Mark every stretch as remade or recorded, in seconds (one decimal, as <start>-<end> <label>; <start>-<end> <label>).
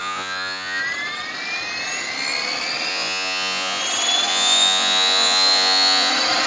0.0-0.8 remade; 0.8-2.9 recorded; 2.9-3.8 remade; 3.8-4.3 recorded; 4.3-6.1 remade; 6.1-6.5 recorded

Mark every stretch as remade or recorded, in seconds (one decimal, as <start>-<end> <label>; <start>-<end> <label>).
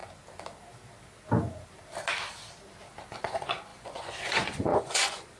0.0-3.1 recorded; 3.1-5.4 remade